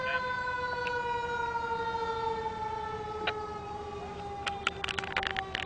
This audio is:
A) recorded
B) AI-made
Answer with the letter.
A